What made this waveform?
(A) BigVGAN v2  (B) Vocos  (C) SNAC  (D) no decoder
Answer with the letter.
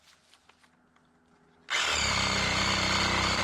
D